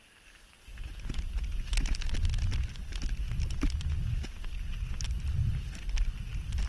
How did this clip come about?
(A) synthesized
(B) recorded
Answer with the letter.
B